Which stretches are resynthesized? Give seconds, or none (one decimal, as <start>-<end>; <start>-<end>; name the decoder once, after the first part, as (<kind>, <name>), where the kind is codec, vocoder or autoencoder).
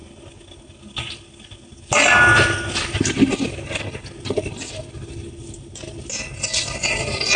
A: none